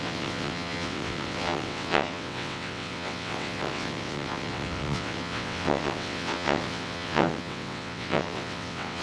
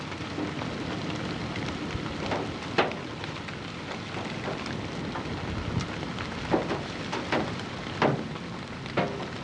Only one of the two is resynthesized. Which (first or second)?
first